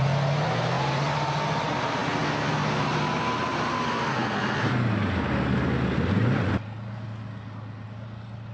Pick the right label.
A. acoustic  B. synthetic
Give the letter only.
A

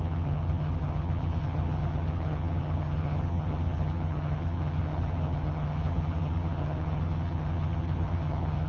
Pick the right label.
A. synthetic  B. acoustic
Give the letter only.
A